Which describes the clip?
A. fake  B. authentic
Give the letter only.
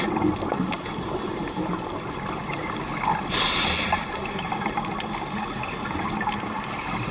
B